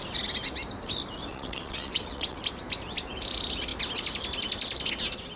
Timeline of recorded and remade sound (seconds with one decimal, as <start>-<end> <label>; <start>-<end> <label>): 0.0-1.3 recorded; 1.3-2.4 remade; 2.4-5.4 recorded